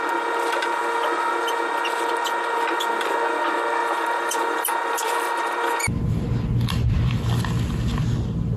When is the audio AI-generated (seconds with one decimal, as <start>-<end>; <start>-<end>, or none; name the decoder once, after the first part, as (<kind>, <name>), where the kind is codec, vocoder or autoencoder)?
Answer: 3.8-7.2 (vocoder, BigVGAN v2)